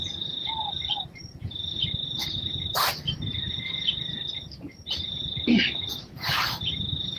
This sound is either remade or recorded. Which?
remade